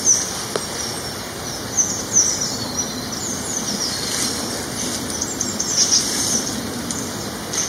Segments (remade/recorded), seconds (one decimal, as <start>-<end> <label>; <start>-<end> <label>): 0.0-7.7 recorded